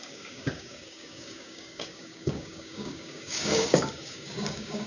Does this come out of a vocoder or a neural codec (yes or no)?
yes